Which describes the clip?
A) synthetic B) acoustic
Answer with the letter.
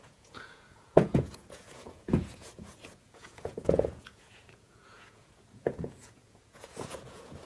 A